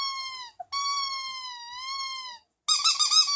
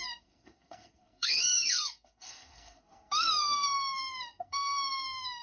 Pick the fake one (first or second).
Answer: second